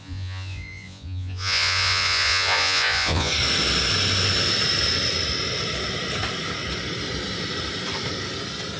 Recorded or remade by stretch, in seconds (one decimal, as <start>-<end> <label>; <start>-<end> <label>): 0.0-3.3 remade; 3.3-8.8 recorded